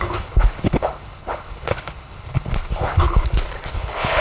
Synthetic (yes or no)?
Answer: yes